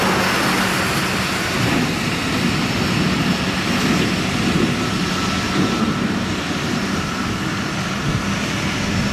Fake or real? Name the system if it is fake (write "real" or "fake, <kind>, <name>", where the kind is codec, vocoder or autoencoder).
real